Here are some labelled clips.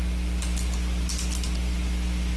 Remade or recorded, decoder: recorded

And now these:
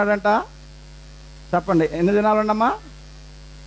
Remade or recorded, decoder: recorded